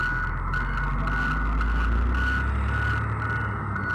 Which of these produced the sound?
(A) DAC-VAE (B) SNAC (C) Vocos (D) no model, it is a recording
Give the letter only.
D